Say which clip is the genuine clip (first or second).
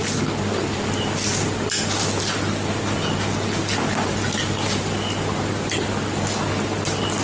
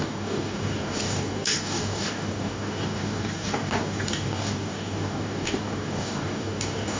first